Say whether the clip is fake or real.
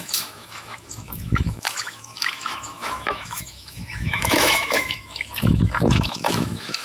fake